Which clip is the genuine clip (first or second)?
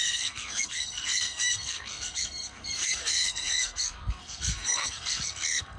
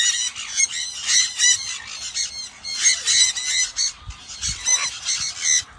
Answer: second